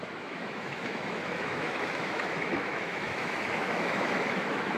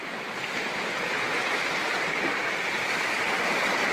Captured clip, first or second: second